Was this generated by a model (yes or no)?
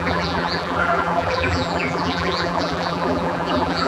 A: yes